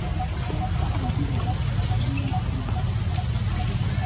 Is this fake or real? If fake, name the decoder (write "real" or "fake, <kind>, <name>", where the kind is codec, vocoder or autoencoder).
real